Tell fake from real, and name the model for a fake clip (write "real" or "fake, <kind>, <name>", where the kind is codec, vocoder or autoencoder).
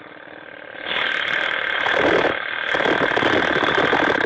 real